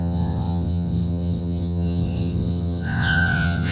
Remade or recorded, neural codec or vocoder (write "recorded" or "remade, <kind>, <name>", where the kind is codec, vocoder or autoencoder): remade, vocoder, WaveNeXt